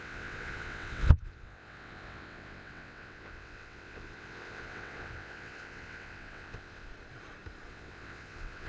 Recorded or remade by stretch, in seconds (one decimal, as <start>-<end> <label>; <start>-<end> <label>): 0.0-6.9 remade; 6.9-7.7 recorded; 7.7-8.7 remade